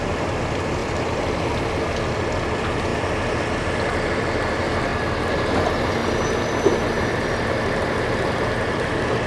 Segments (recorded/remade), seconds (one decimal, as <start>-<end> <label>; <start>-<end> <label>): 0.0-0.8 recorded; 0.8-1.8 remade; 1.8-9.3 recorded